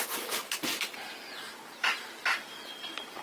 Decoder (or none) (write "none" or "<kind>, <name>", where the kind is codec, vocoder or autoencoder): none